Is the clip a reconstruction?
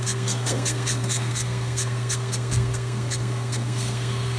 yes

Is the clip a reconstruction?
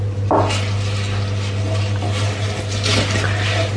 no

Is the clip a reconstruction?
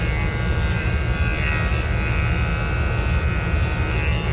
no